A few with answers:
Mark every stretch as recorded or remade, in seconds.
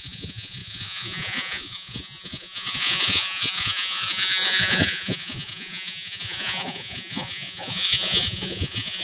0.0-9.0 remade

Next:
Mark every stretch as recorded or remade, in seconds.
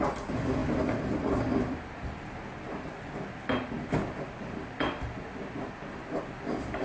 0.0-6.8 recorded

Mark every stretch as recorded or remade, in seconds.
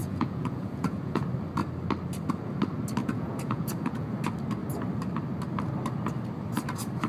0.0-1.2 remade; 1.2-3.0 recorded; 3.0-4.1 remade; 4.1-7.1 recorded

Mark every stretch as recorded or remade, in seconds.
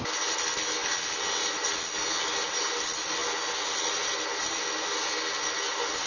0.0-6.1 recorded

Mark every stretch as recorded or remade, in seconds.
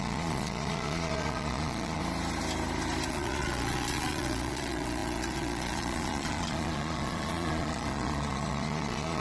0.0-2.0 remade; 2.0-3.1 recorded; 3.1-9.2 remade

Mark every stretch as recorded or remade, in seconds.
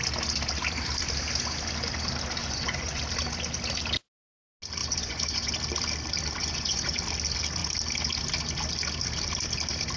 0.0-2.4 recorded; 2.4-3.0 remade; 3.0-4.8 recorded; 4.8-5.5 remade; 5.5-6.4 recorded; 6.4-6.9 remade; 6.9-10.0 recorded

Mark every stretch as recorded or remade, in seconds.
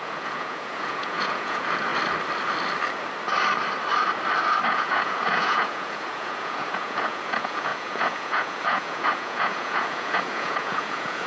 0.0-1.9 remade; 1.9-4.7 recorded; 4.7-11.3 remade